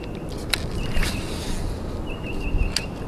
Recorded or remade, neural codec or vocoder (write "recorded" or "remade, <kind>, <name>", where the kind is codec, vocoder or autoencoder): recorded